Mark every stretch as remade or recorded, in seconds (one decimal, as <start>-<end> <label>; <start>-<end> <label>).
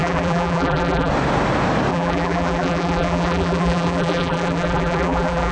0.0-1.1 remade; 1.1-1.9 recorded; 1.9-5.5 remade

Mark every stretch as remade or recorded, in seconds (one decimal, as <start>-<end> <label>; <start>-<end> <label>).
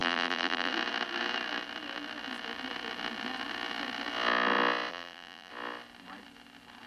0.0-0.7 remade; 0.7-4.9 recorded; 4.9-5.5 remade; 5.5-6.9 recorded